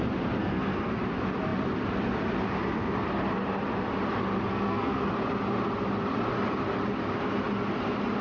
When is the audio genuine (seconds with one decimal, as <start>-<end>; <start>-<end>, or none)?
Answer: 0.0-0.4; 0.9-4.5; 5.1-8.2